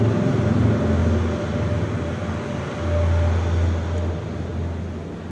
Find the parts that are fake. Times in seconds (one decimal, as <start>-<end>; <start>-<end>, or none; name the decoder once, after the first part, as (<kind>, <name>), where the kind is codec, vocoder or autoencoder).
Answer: none